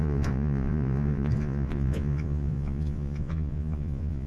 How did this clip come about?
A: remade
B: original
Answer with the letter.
A